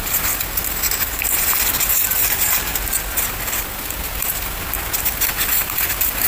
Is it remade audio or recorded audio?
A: recorded